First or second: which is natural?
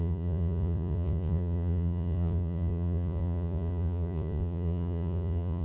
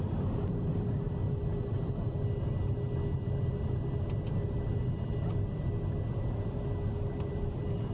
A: second